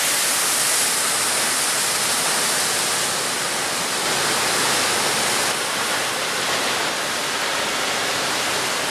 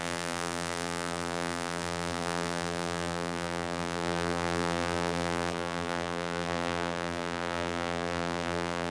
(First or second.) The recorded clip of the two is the first